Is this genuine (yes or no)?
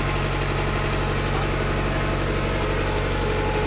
yes